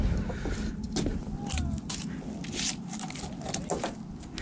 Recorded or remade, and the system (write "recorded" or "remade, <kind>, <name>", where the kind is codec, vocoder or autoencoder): recorded